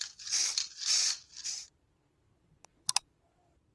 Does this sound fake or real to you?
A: fake